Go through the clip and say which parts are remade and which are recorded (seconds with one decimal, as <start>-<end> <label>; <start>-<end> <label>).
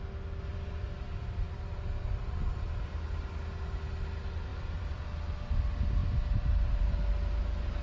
0.0-0.5 recorded; 0.5-1.6 remade; 1.6-4.5 recorded; 4.5-5.1 remade; 5.1-7.8 recorded